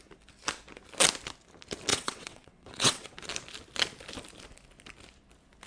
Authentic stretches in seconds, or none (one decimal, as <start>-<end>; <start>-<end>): 0.0-1.9; 3.3-5.7